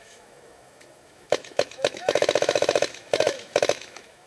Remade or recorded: remade